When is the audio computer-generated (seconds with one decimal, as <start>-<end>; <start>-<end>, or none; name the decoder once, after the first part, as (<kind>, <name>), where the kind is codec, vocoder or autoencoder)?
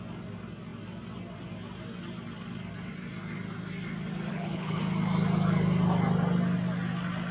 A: 4.3-4.8 (codec, HILCodec)